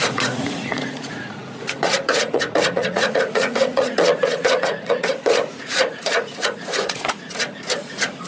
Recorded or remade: remade